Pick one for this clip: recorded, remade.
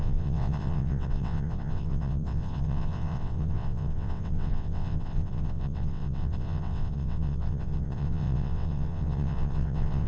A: remade